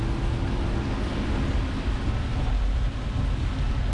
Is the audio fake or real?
real